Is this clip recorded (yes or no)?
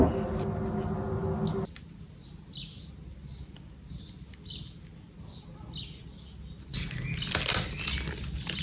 yes